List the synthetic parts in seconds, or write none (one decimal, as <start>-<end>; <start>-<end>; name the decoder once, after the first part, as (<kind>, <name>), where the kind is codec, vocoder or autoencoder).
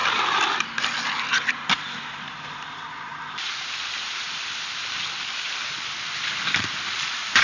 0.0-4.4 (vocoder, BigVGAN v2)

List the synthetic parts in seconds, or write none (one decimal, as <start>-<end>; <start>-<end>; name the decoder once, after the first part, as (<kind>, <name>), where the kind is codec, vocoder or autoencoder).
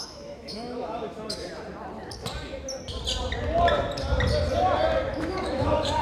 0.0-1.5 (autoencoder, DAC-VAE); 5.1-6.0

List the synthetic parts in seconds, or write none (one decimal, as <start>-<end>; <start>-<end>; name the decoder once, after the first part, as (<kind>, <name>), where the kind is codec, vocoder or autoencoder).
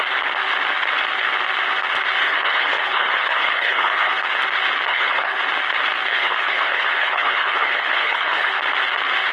2.2-4.1 (codec, HILCodec); 4.9-5.4; 6.1-8.5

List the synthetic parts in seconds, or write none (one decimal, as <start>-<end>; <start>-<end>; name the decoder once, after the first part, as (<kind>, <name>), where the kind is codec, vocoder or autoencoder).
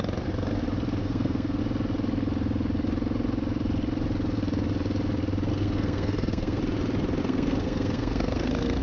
1.0-1.6 (codec, SNAC); 5.5-6.6; 7.2-8.8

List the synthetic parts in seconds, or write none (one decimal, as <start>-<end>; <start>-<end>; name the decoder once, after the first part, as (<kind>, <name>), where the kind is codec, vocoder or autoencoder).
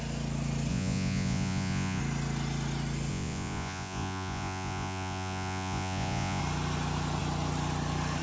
0.7-2.0 (vocoder, Vocos); 3.1-6.4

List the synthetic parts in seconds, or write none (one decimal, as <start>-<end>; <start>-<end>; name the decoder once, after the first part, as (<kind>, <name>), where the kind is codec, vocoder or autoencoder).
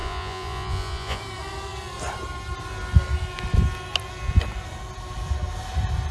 0.0-1.2 (vocoder, Vocos)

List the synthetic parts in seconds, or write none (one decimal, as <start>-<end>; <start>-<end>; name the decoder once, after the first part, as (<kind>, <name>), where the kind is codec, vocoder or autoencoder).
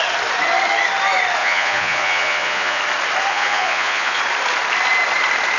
1.4-2.8 (vocoder, Vocos); 3.3-4.2